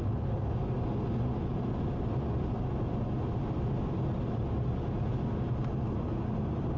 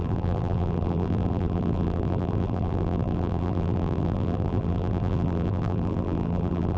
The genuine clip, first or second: first